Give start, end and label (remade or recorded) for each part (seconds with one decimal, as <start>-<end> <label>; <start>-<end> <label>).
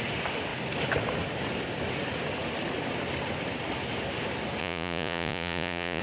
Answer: 0.0-4.6 recorded; 4.6-6.0 remade